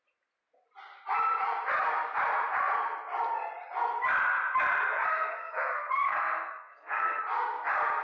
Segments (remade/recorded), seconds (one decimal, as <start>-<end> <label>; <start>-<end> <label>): 0.0-5.1 recorded; 5.1-7.2 remade; 7.2-8.0 recorded

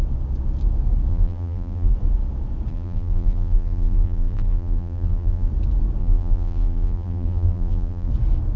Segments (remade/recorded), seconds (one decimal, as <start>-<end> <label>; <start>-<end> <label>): 0.0-1.1 recorded; 1.1-1.9 remade; 1.9-2.7 recorded; 2.7-5.5 remade; 5.5-6.0 recorded; 6.0-8.1 remade; 8.1-8.6 recorded